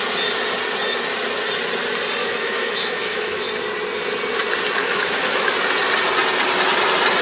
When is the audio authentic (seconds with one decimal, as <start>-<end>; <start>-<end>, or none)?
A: 0.0-2.2; 3.5-4.8; 5.5-7.2